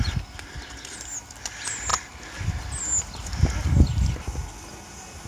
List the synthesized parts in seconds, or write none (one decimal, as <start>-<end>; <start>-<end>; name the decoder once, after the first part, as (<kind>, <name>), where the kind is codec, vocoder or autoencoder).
none